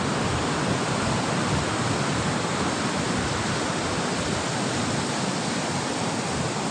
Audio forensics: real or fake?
real